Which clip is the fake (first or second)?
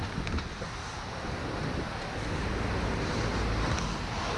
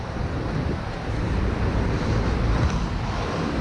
second